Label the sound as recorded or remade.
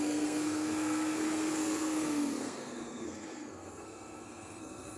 remade